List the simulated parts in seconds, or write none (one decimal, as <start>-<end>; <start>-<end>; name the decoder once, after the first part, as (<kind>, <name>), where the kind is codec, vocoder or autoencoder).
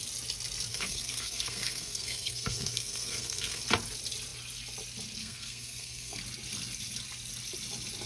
0.7-3.6 (codec, SNAC); 5.2-6.2